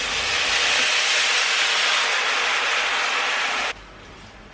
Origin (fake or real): real